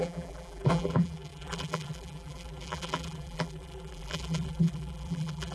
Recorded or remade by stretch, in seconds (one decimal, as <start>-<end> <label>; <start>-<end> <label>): 0.0-5.5 remade